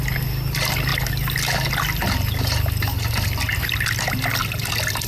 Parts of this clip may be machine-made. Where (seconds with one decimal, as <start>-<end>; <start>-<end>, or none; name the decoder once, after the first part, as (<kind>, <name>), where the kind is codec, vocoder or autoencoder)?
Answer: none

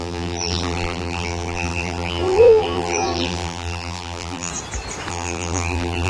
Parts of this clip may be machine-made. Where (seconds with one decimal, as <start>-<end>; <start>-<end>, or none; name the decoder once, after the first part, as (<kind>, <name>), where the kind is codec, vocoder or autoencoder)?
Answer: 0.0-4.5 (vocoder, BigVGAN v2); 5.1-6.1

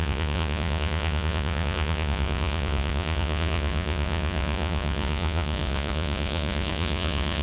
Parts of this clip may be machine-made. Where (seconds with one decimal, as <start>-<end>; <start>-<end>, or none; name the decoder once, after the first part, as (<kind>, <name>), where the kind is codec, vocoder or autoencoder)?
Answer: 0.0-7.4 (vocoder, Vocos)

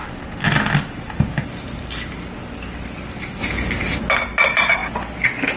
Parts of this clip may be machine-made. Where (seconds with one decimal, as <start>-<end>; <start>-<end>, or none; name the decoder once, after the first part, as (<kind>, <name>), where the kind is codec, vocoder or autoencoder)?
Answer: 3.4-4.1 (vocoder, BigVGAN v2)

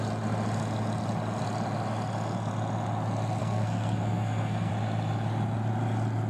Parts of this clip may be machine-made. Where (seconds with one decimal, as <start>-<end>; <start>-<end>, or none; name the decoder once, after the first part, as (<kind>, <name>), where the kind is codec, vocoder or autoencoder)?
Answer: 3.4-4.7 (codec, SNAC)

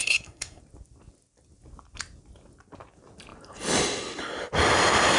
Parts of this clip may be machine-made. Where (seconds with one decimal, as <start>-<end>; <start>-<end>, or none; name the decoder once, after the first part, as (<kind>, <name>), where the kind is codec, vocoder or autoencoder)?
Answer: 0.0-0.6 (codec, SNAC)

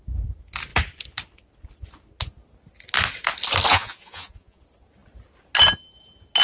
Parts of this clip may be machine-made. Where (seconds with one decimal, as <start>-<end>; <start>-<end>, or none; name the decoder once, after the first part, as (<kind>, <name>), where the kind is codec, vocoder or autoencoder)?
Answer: 3.7-4.6 (vocoder, Vocos)